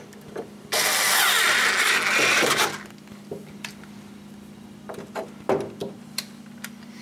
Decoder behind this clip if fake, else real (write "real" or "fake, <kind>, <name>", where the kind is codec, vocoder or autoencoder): real